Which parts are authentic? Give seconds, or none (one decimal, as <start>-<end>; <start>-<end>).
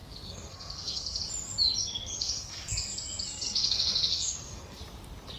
1.2-1.8; 4.8-5.4